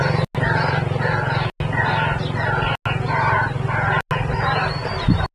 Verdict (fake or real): real